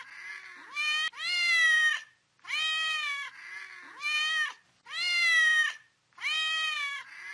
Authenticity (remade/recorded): recorded